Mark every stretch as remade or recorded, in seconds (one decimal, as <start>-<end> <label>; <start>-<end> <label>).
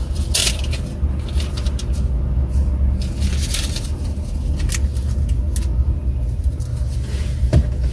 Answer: 0.0-7.9 recorded